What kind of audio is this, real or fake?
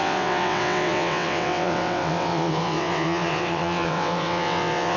fake